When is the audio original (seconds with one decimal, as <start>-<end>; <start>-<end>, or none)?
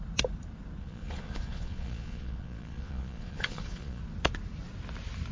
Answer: 0.0-0.8; 4.0-5.3